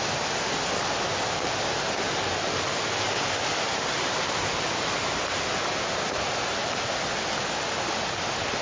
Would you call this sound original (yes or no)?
yes